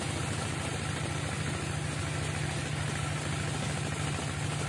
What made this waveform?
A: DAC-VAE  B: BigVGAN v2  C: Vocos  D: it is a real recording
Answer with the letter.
D